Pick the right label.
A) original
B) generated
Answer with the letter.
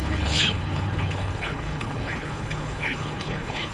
B